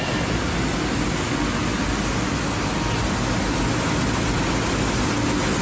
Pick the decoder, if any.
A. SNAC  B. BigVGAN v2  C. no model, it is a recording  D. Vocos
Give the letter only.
C